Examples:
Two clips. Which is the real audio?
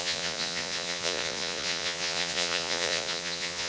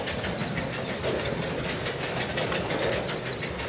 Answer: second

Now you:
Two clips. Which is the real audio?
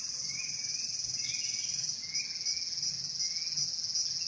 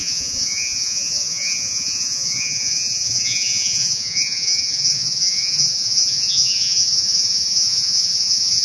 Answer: first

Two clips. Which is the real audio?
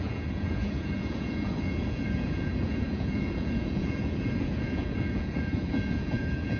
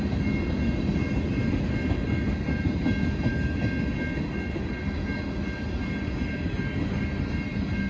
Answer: second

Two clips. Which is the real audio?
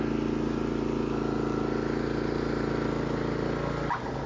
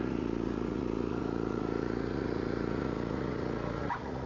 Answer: first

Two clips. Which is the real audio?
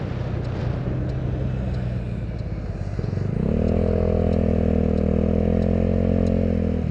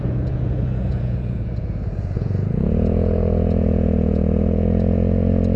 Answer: first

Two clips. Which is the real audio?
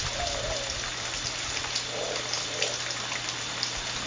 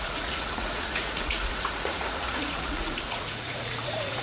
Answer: first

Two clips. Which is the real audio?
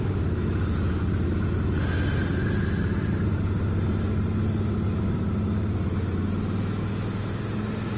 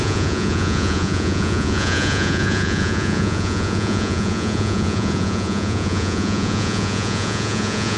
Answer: first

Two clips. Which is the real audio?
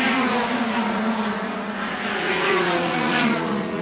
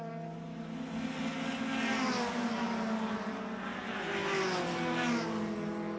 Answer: second